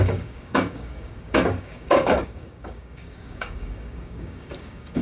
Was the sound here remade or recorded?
remade